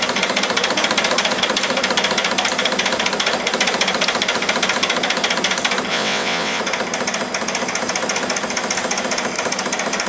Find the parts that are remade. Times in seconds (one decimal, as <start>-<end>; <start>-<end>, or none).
5.9-6.6